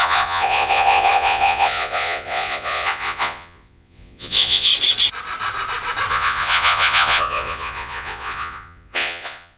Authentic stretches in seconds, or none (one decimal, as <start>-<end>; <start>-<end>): 4.7-6.1